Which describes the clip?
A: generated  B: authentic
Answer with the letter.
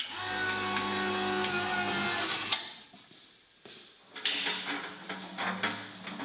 B